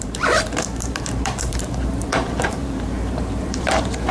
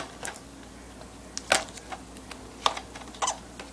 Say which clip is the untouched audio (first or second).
second